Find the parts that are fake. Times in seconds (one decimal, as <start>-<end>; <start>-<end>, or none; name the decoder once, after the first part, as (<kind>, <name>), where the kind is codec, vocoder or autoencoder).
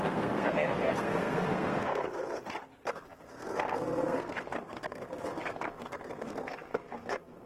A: 0.0-2.1 (codec, SNAC); 2.9-7.5